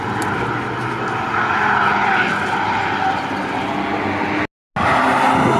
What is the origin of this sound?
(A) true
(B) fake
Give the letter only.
A